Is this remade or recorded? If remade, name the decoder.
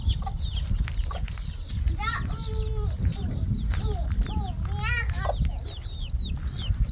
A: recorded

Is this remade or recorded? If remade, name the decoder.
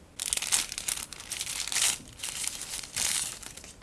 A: recorded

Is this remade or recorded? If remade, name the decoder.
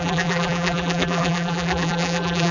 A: remade, vocoder, BigVGAN v2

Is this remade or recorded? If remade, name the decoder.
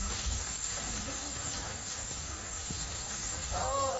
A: remade, codec, DAC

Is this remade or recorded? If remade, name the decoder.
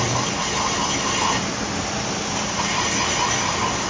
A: recorded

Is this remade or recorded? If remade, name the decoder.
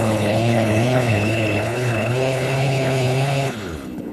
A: remade, codec, HILCodec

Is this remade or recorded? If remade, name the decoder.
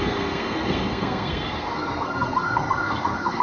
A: remade, codec, SNAC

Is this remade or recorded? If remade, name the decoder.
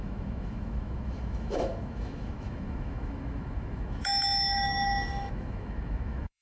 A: remade, autoencoder, DAC-VAE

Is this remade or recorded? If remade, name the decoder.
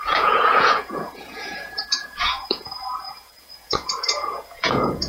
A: remade, vocoder, Vocos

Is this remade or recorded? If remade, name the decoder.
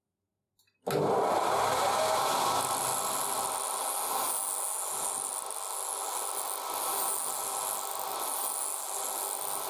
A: recorded